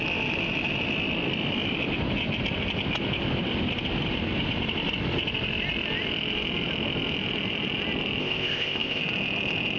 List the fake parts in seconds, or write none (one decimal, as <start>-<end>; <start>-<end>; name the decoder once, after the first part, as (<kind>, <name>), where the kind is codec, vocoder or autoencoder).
8.2-9.0 (codec, ZipCodec)

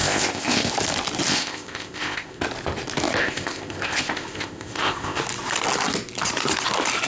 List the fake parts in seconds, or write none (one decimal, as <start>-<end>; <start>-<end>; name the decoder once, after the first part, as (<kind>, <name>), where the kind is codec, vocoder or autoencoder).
0.0-0.7 (codec, ZipCodec); 1.3-2.4; 3.2-5.2

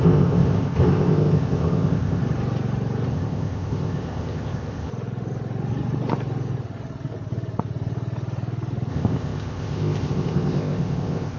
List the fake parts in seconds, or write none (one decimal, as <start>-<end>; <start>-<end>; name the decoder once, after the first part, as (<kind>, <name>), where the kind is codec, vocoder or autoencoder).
0.0-2.2 (codec, ZipCodec); 3.1-4.9; 8.9-11.4